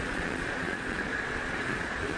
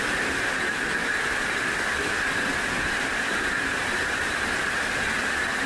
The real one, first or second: second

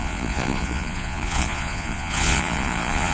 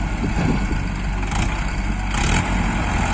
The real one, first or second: second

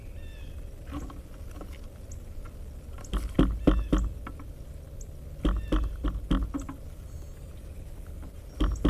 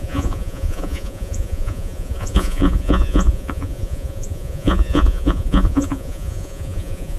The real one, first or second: first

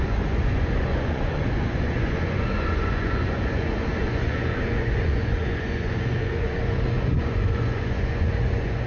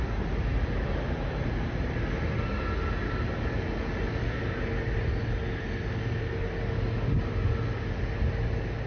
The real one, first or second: second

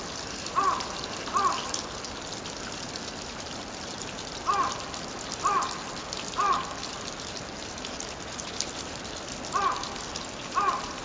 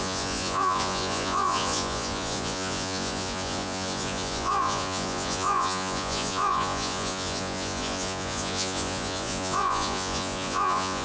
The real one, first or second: first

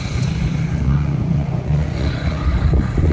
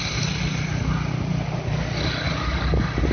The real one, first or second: second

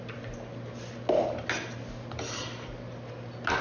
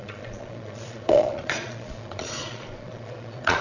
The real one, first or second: first